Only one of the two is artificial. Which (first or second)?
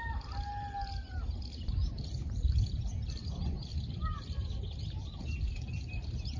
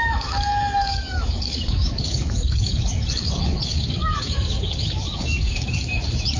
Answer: second